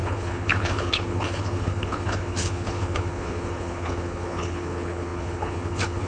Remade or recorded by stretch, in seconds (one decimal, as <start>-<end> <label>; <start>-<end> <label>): 0.0-6.1 remade